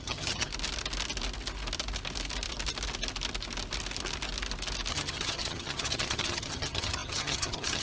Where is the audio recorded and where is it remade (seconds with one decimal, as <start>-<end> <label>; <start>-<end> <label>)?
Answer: 0.0-0.5 remade; 0.5-4.9 recorded; 4.9-7.8 remade